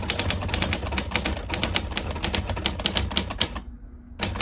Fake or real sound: real